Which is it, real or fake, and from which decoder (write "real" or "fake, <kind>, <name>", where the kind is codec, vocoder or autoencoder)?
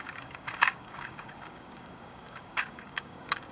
fake, codec, DAC